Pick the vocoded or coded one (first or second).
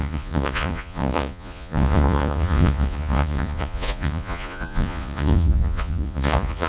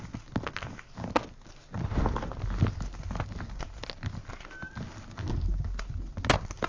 first